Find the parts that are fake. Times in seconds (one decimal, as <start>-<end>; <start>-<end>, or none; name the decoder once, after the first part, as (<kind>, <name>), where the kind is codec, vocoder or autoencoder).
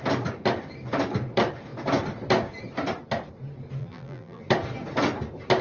3.8-4.4 (vocoder, BigVGAN v2)